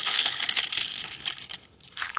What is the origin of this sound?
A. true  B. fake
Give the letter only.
B